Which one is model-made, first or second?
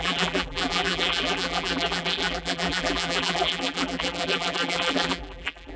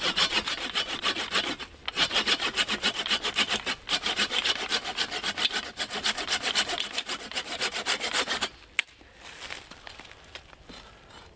first